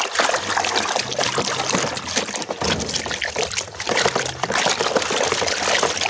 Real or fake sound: real